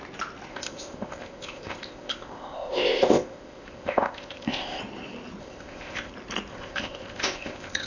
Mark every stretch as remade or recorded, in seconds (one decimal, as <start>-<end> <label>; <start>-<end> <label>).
0.0-0.5 recorded; 0.5-4.8 remade; 4.8-5.4 recorded; 5.4-6.1 remade; 6.1-6.5 recorded; 6.5-7.9 remade